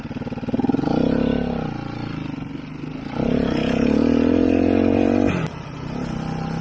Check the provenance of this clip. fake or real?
real